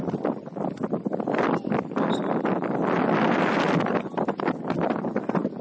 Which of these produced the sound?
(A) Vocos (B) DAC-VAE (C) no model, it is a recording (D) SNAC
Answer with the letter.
C